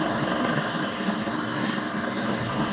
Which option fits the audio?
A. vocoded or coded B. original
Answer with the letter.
A